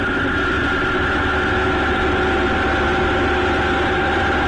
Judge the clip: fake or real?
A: real